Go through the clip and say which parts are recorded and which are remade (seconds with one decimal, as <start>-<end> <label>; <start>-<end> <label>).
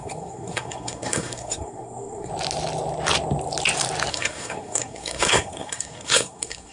0.0-2.3 remade; 2.3-4.1 recorded; 4.1-6.7 remade